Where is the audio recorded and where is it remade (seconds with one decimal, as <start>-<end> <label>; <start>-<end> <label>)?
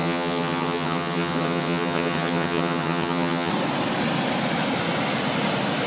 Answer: 0.0-3.5 remade; 3.5-5.9 recorded